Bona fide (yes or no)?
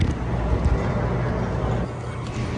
yes